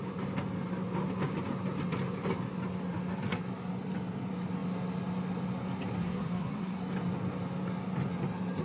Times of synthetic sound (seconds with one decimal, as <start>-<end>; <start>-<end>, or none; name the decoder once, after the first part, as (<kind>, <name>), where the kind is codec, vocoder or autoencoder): 6.0-6.8 (codec, SNAC)